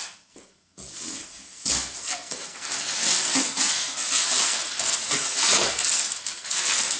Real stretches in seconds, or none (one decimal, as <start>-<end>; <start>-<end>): none